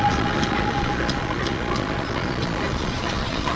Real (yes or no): no